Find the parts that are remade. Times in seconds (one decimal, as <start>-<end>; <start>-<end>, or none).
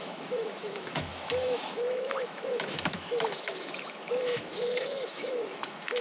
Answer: 0.0-6.0